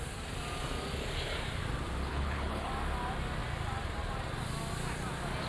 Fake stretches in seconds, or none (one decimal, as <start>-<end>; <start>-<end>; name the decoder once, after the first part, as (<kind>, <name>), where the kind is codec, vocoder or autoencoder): 2.1-2.7 (codec, HILCodec)